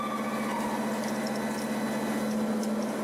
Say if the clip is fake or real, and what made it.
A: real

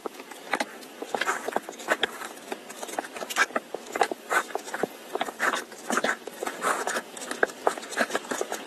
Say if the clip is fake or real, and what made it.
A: fake, codec, DAC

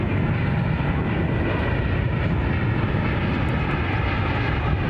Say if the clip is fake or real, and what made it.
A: real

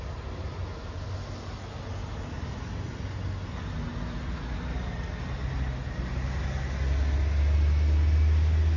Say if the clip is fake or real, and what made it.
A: real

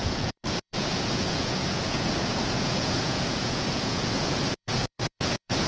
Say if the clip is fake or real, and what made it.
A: fake, vocoder, Vocos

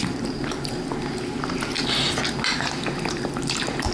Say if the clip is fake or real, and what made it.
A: real